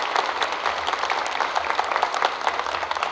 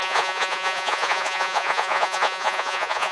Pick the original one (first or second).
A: first